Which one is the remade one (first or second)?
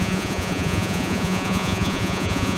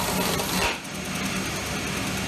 first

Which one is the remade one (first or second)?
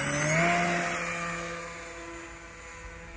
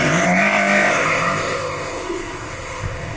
second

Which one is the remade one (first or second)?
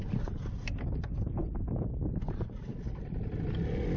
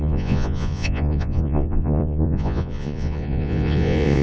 second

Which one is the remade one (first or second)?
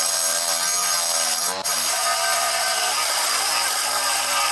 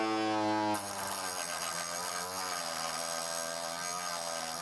first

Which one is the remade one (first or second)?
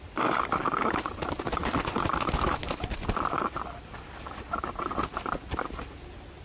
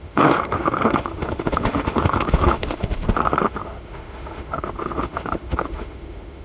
second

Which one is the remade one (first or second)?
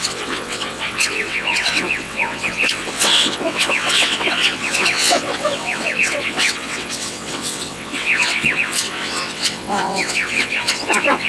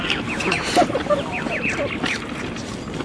first